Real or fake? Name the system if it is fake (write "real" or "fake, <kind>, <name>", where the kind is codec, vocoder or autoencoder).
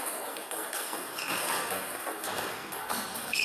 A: fake, codec, SNAC